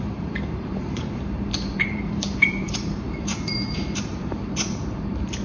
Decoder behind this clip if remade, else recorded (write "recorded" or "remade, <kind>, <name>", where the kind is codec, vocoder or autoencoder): remade, vocoder, BigVGAN v2